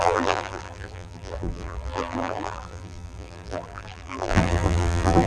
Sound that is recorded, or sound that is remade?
remade